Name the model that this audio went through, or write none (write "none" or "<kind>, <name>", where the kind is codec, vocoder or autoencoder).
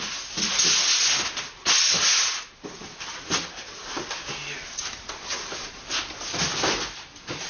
none